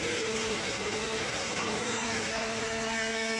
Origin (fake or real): fake